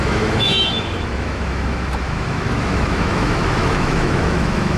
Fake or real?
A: fake